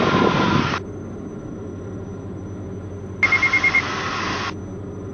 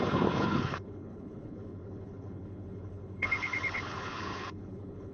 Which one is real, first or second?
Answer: first